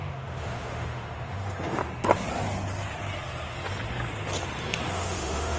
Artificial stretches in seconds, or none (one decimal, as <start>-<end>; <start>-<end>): 0.0-1.8; 4.9-5.6